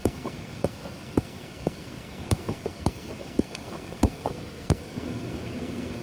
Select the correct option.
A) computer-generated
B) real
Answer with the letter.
A